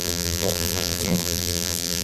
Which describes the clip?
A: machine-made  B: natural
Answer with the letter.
A